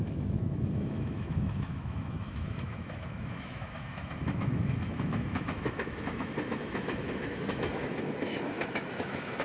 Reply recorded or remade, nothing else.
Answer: remade